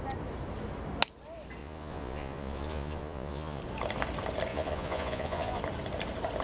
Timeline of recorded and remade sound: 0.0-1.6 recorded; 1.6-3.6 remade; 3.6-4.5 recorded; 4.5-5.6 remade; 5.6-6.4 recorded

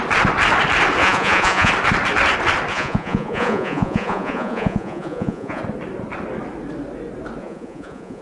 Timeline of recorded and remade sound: 0.0-1.0 recorded; 1.0-1.7 remade; 1.7-2.7 recorded; 2.7-5.6 remade; 5.6-7.4 recorded; 7.4-8.2 remade

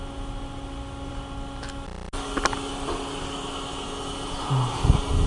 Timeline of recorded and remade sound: 0.0-5.3 recorded

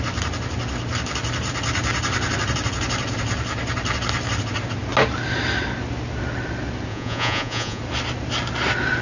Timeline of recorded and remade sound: 0.0-6.9 recorded; 6.9-7.8 remade; 7.8-9.0 recorded

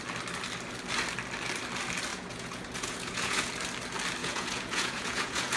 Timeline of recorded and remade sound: 0.0-2.1 recorded; 2.1-3.5 remade; 3.5-4.2 recorded; 4.2-5.6 remade

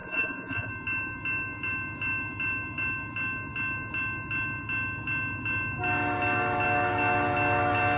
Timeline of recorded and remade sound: 0.0-0.7 remade; 0.7-8.0 recorded

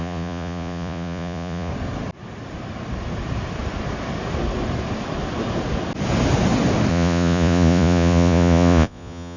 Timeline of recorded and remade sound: 0.0-1.7 remade; 1.7-6.9 recorded; 6.9-9.4 remade